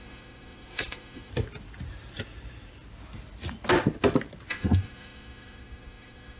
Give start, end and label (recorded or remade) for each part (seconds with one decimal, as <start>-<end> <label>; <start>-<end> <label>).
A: 0.0-1.3 remade; 1.3-4.5 recorded; 4.5-6.4 remade